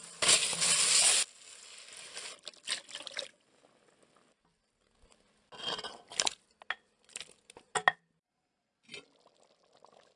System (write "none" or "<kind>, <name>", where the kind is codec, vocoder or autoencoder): none